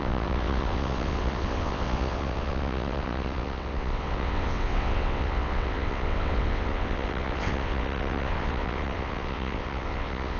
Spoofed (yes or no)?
yes